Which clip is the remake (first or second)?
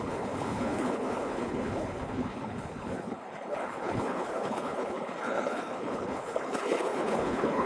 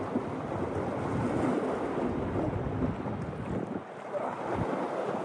first